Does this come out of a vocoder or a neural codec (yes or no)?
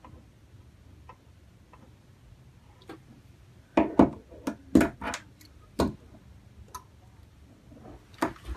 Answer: no